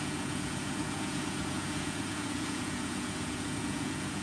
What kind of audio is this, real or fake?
fake